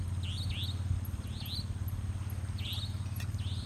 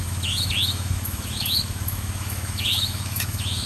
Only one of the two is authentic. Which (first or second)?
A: first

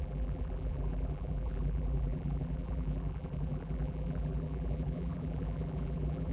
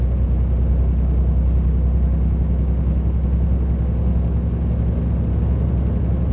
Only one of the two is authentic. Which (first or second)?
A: second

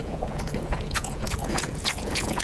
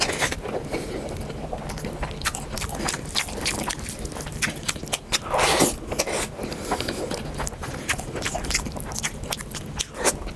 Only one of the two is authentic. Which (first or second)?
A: second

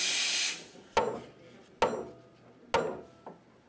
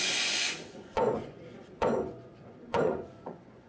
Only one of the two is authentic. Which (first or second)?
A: first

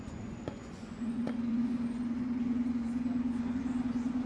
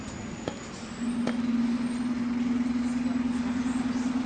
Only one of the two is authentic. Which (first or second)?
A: second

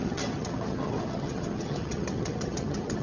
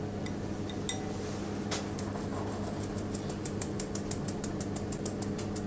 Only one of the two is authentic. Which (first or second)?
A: second